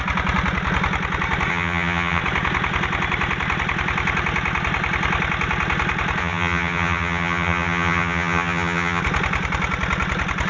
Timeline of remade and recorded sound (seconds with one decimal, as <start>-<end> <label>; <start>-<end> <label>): 0.0-1.5 recorded; 1.5-2.2 remade; 2.2-6.2 recorded; 6.2-9.0 remade; 9.0-10.5 recorded